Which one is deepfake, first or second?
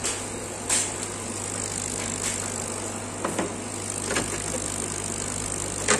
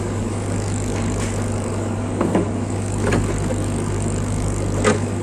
second